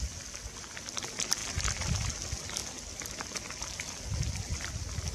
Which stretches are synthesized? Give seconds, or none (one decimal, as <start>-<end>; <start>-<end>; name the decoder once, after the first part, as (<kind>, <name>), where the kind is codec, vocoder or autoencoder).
none